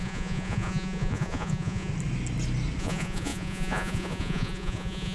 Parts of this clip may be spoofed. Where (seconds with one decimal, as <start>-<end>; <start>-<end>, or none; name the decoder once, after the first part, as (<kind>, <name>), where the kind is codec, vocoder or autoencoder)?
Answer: 0.0-1.9 (vocoder, Vocos); 2.8-5.1